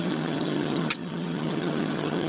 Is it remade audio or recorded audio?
remade